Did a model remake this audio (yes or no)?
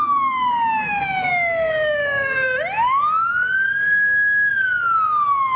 no